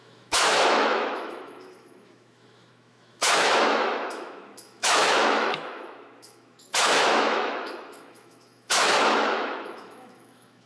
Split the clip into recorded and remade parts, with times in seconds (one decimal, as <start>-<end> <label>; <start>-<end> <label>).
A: 0.0-10.7 remade